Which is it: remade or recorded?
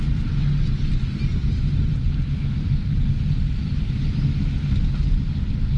recorded